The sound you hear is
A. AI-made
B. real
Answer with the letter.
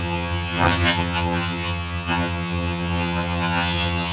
A